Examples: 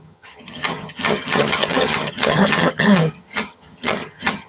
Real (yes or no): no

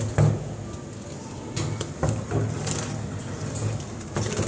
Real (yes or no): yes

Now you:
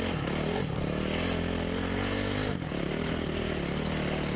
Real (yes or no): yes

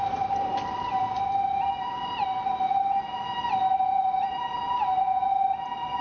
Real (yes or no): yes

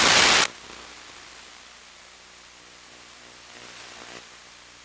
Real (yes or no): yes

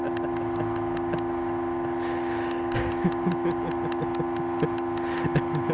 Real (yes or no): yes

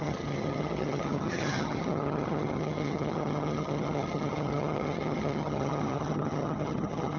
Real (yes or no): no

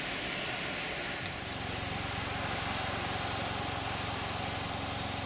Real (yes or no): yes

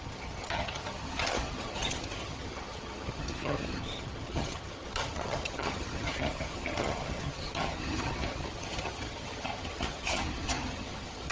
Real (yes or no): no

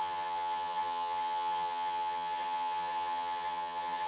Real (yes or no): no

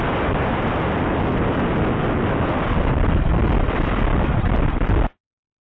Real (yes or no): yes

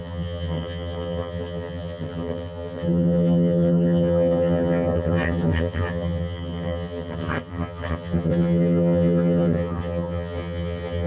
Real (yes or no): no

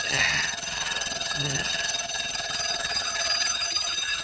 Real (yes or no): no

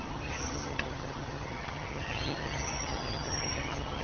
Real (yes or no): no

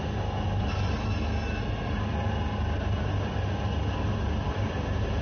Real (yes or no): yes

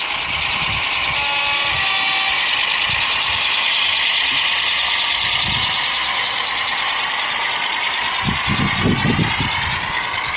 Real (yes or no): yes